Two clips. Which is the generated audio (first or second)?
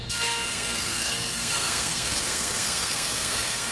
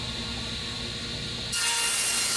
first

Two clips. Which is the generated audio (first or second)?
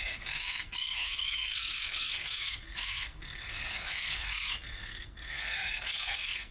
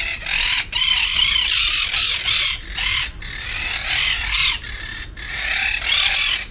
first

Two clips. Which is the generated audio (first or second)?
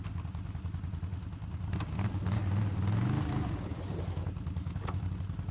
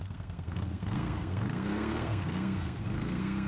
second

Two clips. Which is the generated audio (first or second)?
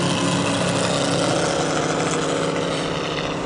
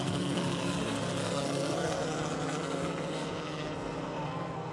second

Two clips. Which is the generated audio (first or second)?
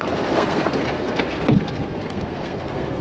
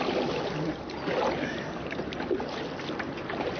first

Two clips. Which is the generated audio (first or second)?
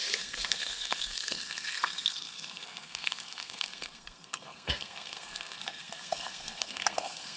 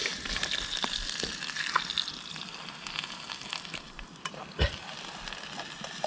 first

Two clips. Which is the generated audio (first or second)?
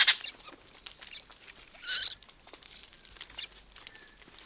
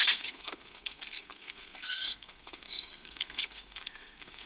second